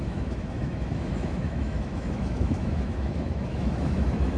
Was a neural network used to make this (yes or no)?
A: yes